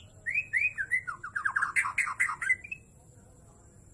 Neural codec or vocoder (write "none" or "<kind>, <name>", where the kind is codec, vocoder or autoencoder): none